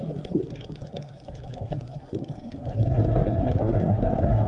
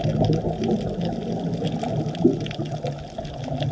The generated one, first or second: first